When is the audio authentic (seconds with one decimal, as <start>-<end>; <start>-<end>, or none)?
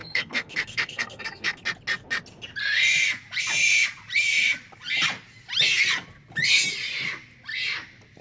1.6-8.2